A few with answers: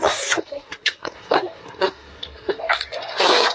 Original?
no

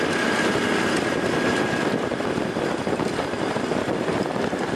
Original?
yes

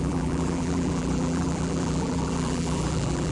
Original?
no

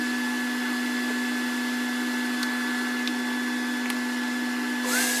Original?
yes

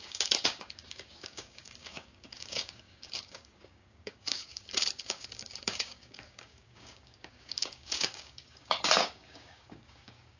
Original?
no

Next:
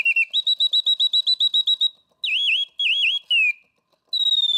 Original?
yes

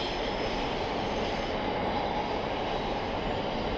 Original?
yes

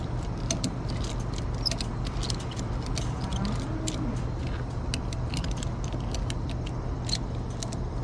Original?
yes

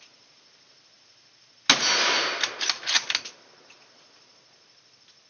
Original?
yes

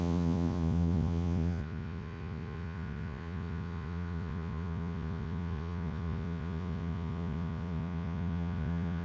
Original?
no